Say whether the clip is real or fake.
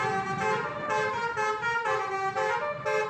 real